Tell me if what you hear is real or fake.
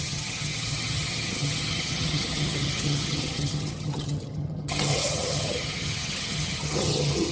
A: fake